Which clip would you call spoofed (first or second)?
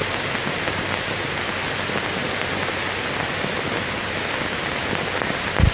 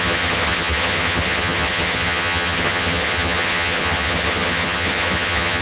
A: second